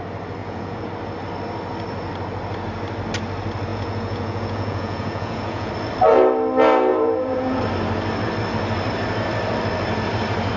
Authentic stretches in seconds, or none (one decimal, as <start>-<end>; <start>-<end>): 0.0-0.4; 0.9-3.7; 5.7-6.9; 7.6-10.6